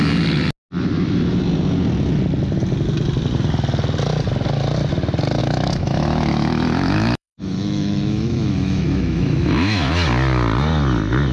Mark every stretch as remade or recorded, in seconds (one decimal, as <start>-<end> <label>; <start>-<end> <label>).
0.0-5.4 recorded; 5.4-9.9 remade; 9.9-11.3 recorded